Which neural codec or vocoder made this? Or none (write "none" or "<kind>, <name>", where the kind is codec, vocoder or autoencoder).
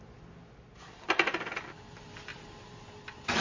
none